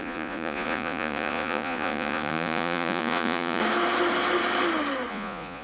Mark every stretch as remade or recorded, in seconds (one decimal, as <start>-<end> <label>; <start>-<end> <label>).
0.0-3.6 remade; 3.6-5.1 recorded; 5.1-5.6 remade